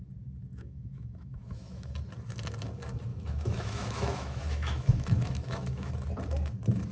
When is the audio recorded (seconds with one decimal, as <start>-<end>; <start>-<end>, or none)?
0.0-0.5; 1.9-3.1; 5.9-6.9